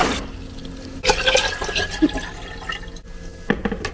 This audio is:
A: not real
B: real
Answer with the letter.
B